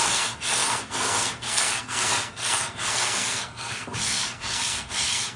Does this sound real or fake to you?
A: fake